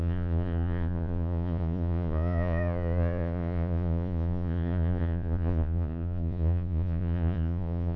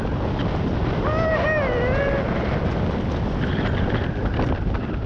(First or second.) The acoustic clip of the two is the second